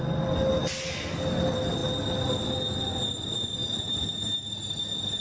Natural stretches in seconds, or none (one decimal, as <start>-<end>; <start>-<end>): 0.0-5.2